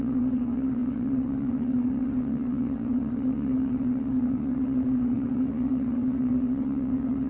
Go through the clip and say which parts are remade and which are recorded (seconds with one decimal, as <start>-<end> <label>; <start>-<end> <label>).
0.0-7.3 remade